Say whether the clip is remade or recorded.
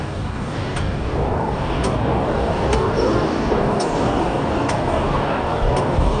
remade